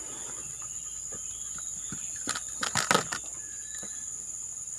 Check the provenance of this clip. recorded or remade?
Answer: recorded